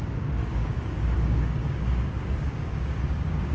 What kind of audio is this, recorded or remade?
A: remade